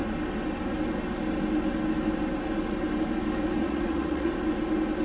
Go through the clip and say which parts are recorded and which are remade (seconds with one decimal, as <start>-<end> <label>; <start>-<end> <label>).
0.0-3.6 recorded; 3.6-4.3 remade; 4.3-5.0 recorded